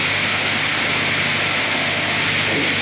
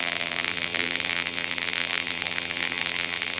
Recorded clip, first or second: first